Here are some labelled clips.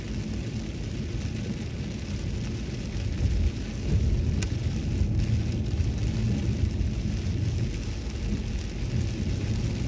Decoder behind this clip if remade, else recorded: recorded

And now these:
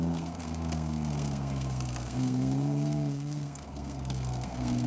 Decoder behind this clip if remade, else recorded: remade, codec, SNAC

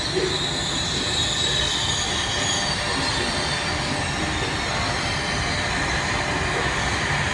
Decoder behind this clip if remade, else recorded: recorded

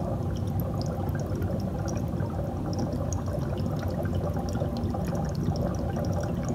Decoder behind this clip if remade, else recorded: recorded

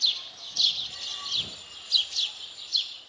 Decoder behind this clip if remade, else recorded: recorded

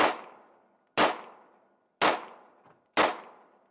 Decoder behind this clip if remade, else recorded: recorded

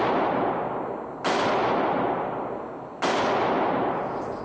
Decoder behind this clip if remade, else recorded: recorded